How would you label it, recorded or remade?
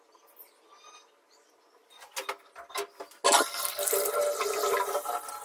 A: recorded